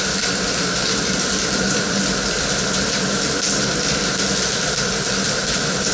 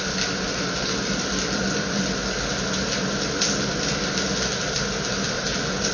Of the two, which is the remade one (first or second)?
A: first